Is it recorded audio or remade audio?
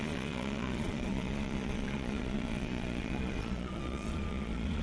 remade